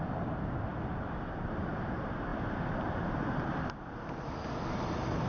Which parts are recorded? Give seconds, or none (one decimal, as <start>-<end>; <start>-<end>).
none